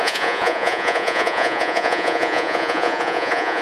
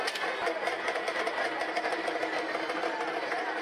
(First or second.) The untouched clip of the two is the second